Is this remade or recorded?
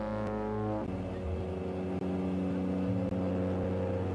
recorded